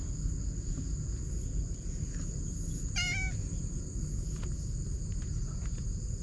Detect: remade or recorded recorded